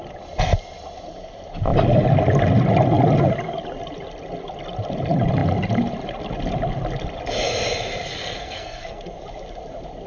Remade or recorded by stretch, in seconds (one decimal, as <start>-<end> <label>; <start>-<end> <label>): 0.0-8.2 recorded; 8.2-9.0 remade; 9.0-10.1 recorded